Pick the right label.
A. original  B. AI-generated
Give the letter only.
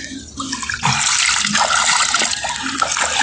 A